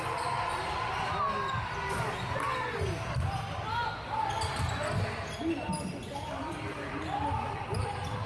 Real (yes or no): yes